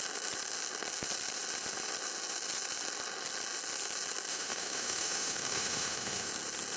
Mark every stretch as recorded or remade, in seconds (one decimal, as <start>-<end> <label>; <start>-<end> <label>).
0.0-4.3 recorded; 4.3-6.3 remade; 6.3-6.8 recorded